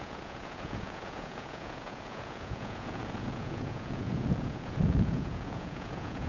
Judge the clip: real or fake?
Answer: fake